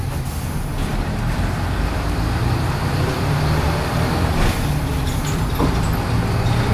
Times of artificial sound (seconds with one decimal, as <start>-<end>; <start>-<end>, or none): 0.9-4.9